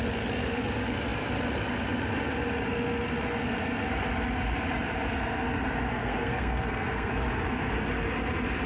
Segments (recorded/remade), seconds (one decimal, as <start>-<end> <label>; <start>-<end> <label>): 0.0-5.9 recorded; 5.9-7.1 remade; 7.1-8.7 recorded